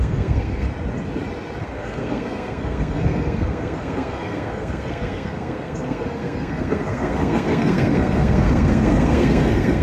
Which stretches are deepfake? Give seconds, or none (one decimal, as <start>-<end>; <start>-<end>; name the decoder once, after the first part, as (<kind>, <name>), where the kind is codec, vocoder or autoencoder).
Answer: 0.0-0.7 (codec, SNAC); 1.6-9.8